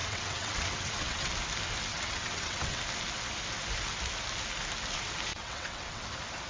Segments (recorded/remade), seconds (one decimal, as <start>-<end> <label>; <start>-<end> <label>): 0.0-1.3 remade; 1.3-1.9 recorded; 1.9-2.8 remade; 2.8-5.3 recorded; 5.3-6.0 remade; 6.0-6.5 recorded